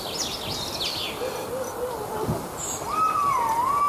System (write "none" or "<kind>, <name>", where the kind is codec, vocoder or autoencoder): none